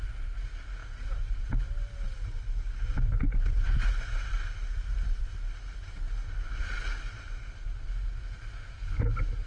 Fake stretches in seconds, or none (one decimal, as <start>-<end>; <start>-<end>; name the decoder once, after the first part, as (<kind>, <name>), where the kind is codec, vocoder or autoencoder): none